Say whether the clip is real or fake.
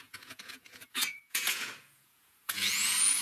fake